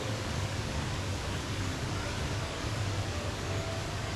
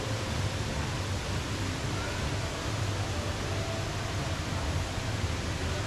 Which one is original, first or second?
second